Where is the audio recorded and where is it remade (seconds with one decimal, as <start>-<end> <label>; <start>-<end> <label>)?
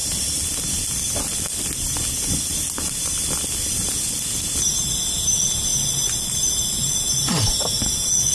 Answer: 0.0-8.3 recorded